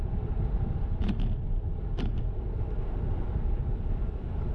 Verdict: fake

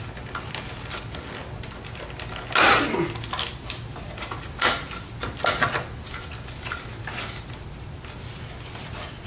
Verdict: real